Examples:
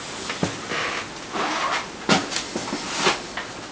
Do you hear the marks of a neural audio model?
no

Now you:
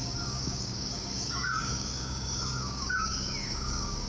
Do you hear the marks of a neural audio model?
yes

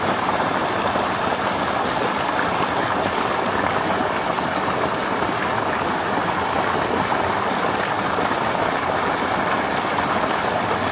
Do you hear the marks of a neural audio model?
no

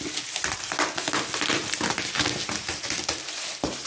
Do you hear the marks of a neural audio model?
no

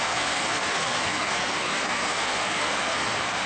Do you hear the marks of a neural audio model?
yes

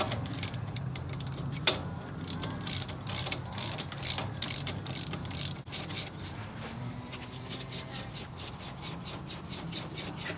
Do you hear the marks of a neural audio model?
yes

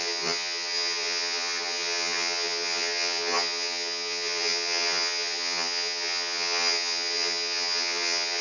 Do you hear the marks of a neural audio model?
yes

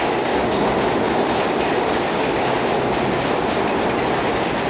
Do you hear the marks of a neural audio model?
no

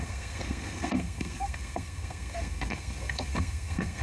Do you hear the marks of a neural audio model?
yes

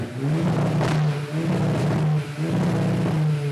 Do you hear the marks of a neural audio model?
no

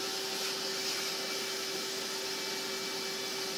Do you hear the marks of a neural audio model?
no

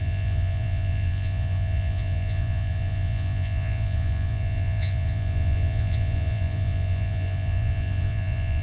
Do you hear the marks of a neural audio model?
yes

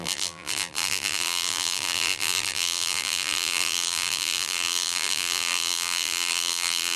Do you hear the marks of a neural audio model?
yes